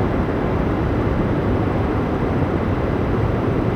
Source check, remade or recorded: remade